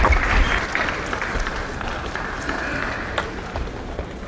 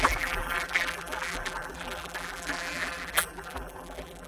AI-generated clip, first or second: second